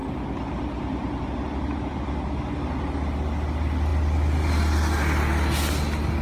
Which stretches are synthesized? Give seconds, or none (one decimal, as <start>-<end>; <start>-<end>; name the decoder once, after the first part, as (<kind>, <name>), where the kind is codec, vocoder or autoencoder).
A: none